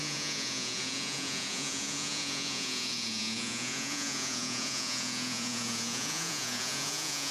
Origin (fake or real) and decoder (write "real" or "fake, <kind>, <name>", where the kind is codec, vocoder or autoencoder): fake, vocoder, Vocos